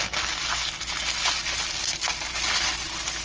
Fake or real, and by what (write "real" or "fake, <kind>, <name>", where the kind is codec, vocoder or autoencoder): real